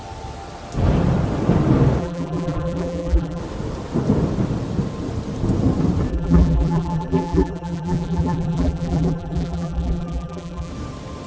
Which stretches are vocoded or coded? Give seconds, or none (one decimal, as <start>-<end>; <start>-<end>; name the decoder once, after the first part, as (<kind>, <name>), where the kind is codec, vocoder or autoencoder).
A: 2.0-3.4 (vocoder, BigVGAN v2); 6.1-10.7